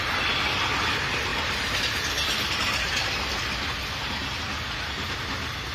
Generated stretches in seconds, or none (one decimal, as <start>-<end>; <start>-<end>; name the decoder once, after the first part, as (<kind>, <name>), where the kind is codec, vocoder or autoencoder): none